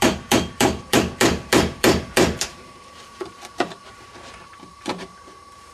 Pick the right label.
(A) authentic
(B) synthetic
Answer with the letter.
B